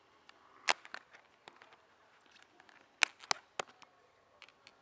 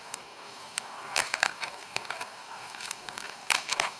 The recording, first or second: first